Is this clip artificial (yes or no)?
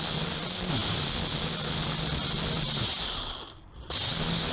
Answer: no